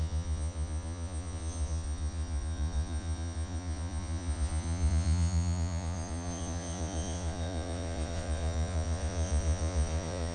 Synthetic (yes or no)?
yes